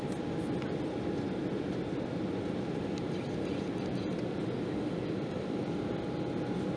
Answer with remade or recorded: recorded